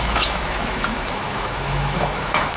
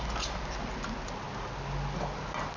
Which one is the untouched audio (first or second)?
second